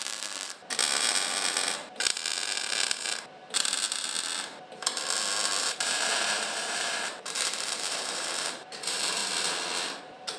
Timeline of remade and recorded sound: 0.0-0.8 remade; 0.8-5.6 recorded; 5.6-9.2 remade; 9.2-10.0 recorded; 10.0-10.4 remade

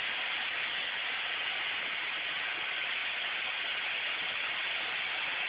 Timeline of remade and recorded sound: 0.0-5.5 recorded

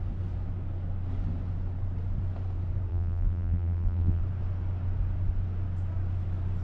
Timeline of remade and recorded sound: 0.0-2.9 recorded; 2.9-4.2 remade; 4.2-6.6 recorded

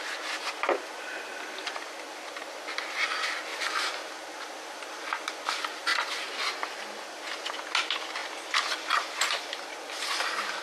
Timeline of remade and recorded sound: 0.0-10.6 recorded

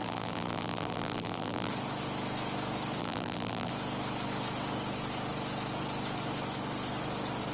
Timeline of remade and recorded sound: 0.0-1.7 remade; 1.7-3.0 recorded; 3.0-3.7 remade; 3.7-7.5 recorded

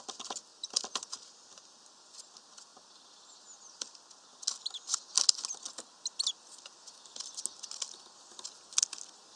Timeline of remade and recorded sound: 0.0-9.4 recorded

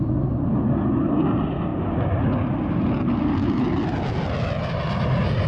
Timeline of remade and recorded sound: 0.0-5.5 recorded

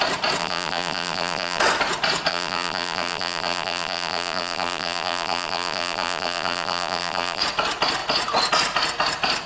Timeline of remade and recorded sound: 0.0-0.4 recorded; 0.4-1.6 remade; 1.6-2.3 recorded; 2.3-7.4 remade; 7.4-9.5 recorded